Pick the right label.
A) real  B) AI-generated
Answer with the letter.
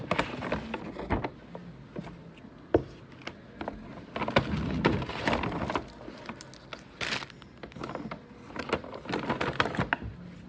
A